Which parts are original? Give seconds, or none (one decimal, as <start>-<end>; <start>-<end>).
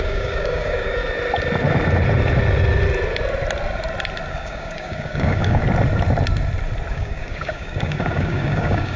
1.0-4.3; 5.6-6.9